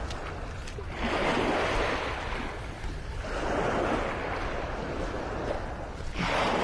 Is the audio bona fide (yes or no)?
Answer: yes